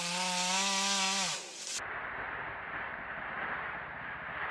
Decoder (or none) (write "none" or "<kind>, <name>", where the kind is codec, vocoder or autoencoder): none